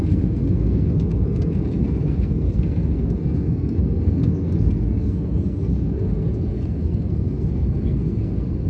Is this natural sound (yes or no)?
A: no